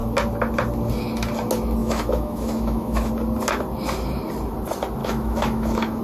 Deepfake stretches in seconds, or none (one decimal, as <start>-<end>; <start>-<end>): 1.8-3.1; 5.0-6.0